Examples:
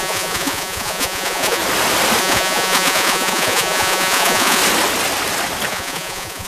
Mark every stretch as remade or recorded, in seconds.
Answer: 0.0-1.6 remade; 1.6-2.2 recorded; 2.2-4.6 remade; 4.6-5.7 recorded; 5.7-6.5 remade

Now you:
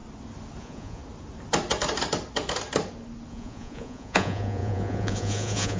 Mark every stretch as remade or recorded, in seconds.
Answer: 0.0-0.6 recorded; 0.6-1.0 remade; 1.0-3.3 recorded; 3.3-5.8 remade